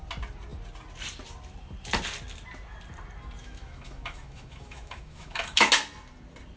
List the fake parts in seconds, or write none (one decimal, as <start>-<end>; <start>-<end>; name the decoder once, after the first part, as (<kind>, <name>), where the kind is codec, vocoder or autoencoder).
3.4-5.7 (autoencoder, DAC-VAE)